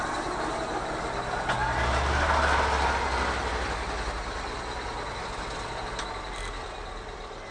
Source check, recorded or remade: recorded